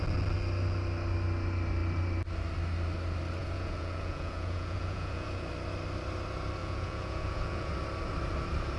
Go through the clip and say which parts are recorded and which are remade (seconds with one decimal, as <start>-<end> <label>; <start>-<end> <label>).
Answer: 0.0-3.4 recorded; 3.4-5.5 remade; 5.5-6.6 recorded; 6.6-7.7 remade; 7.7-8.8 recorded